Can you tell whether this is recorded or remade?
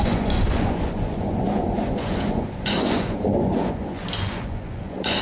remade